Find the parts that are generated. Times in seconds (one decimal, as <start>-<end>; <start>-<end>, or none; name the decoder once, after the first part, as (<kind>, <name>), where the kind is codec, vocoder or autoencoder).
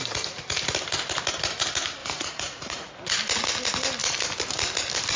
2.0-2.9 (vocoder, Vocos)